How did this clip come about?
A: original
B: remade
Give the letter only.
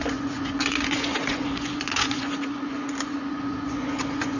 B